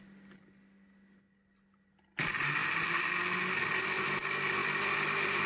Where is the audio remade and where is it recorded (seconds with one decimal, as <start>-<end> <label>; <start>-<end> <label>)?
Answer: 0.0-5.5 recorded